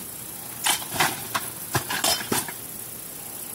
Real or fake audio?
real